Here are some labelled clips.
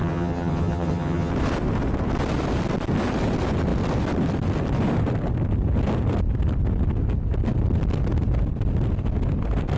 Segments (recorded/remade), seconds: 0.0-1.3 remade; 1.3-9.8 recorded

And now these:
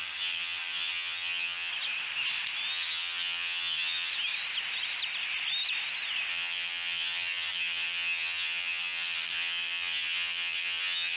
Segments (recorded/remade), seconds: 0.0-1.7 remade; 1.7-2.7 recorded; 2.7-4.1 remade; 4.1-6.3 recorded; 6.3-11.2 remade

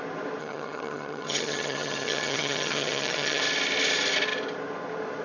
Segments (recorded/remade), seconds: 0.0-0.4 recorded; 0.4-3.4 remade; 3.4-5.2 recorded

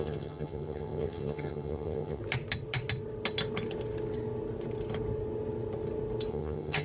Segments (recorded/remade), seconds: 0.0-2.2 remade; 2.2-6.3 recorded; 6.3-6.8 remade

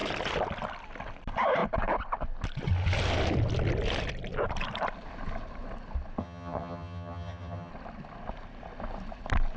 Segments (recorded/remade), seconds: 0.0-6.2 recorded; 6.2-7.7 remade; 7.7-9.6 recorded

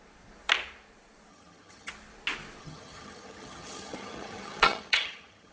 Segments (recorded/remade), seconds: 0.0-1.3 recorded; 1.3-1.9 remade; 1.9-2.6 recorded; 2.6-5.5 remade

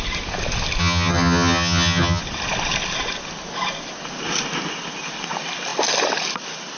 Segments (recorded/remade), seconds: 0.0-0.8 recorded; 0.8-2.2 remade; 2.2-6.8 recorded